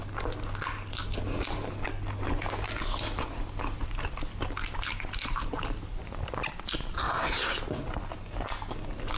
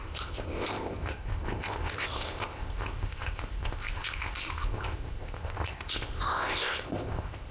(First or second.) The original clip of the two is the first